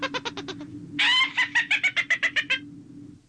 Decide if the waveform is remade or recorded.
recorded